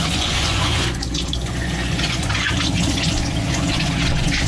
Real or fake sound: fake